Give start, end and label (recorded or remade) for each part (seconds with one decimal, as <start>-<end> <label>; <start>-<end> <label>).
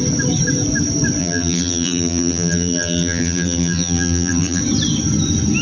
0.0-1.2 recorded; 1.2-4.6 remade; 4.6-5.6 recorded